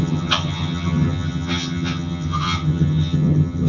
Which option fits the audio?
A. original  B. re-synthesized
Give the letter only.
B